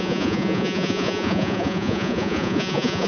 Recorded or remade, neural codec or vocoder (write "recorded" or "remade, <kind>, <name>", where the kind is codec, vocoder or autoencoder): remade, vocoder, Vocos